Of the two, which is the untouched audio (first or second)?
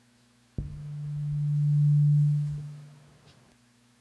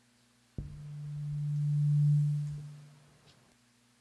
second